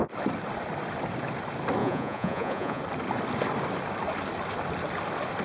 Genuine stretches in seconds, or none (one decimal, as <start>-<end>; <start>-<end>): 0.0-1.8; 2.8-5.4